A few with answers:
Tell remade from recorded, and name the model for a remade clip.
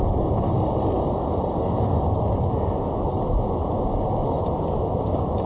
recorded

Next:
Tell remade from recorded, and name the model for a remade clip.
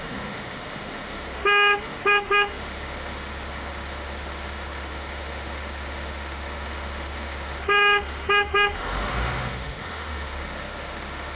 remade, autoencoder, DAC-VAE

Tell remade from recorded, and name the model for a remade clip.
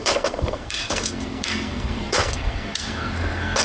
remade, codec, SNAC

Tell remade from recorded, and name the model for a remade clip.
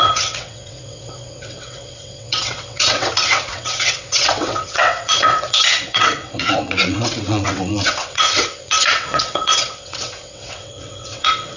remade, vocoder, WaveNeXt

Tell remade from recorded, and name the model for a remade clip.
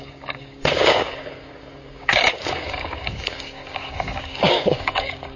remade, codec, DAC